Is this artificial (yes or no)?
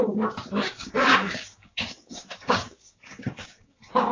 yes